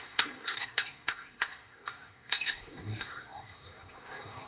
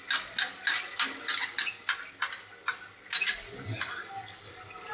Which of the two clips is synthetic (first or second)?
first